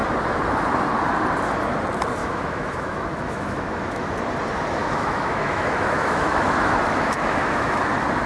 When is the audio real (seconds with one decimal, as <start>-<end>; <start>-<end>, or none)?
0.0-2.2; 4.2-4.8; 7.8-8.3